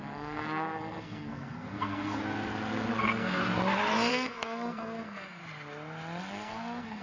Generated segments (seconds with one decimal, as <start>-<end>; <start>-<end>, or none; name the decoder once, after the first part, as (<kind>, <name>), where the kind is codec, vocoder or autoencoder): 0.0-2.2 (codec, SNAC); 3.0-3.4; 4.1-5.4; 6.2-7.0